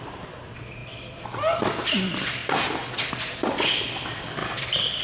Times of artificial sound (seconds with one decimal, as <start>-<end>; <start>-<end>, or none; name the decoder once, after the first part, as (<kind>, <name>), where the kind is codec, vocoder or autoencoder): 4.4-5.0 (vocoder, BigVGAN v2)